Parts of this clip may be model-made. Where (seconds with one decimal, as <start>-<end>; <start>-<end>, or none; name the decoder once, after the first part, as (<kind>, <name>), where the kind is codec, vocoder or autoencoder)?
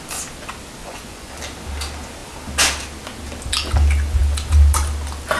0.8-1.3 (vocoder, Vocos)